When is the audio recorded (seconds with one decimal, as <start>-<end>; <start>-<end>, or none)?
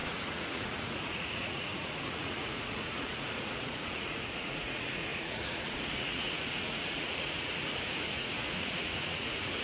none